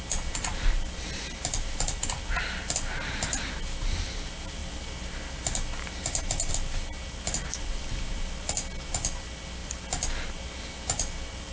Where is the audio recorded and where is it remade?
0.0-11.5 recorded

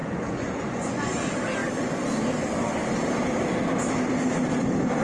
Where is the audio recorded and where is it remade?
0.0-1.2 remade; 1.2-5.0 recorded

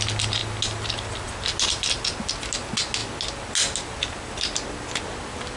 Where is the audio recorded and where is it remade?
0.0-5.6 recorded

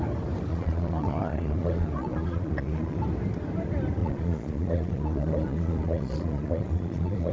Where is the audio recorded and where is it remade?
0.0-0.5 recorded; 0.5-3.0 remade; 3.0-4.0 recorded; 4.0-7.3 remade